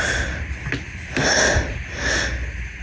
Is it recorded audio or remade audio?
recorded